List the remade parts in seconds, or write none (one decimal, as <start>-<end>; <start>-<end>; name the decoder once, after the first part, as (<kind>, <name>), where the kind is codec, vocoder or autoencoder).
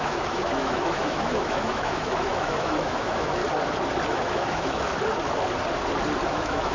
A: 0.0-3.4 (autoencoder, DAC-VAE); 4.1-4.9; 6.3-6.7